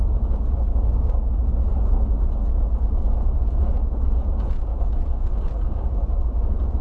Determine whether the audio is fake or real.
fake